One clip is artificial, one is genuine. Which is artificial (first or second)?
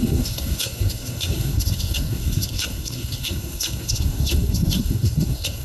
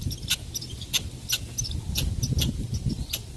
first